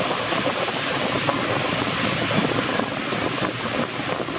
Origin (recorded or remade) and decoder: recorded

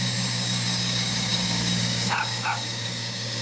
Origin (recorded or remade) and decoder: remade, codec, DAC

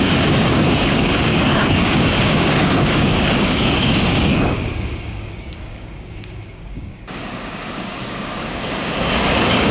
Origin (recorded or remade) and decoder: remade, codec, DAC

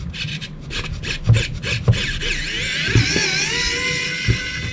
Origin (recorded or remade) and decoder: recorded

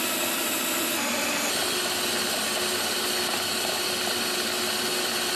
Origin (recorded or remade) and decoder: recorded